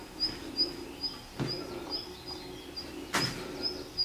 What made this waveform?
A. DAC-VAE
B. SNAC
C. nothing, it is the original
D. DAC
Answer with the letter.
C